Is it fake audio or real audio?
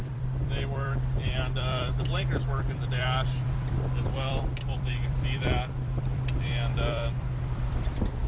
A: fake